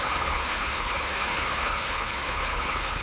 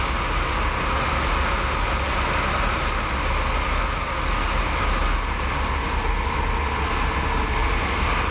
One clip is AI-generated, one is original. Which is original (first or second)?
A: second